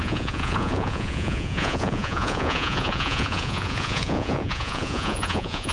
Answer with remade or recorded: remade